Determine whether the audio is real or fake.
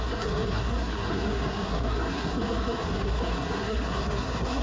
fake